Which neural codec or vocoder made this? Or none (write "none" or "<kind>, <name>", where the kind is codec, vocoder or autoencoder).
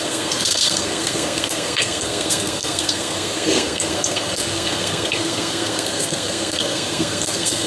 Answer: codec, SNAC